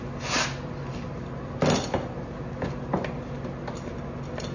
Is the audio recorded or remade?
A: recorded